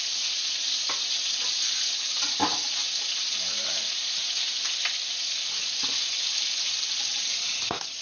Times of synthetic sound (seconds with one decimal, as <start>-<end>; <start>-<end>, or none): none